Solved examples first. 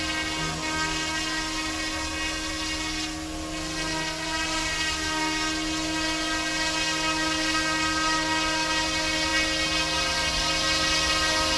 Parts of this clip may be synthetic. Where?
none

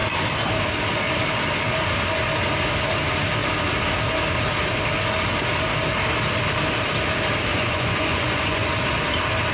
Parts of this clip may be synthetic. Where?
7.5-8.7 (vocoder, Vocos)